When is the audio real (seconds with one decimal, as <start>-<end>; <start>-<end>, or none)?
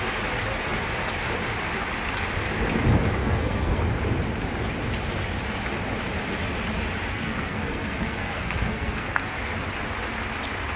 0.0-3.2; 3.8-7.1; 9.3-10.8